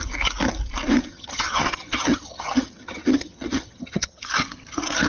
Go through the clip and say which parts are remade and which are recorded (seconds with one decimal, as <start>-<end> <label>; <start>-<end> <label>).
0.0-1.1 recorded; 1.1-4.2 remade; 4.2-5.1 recorded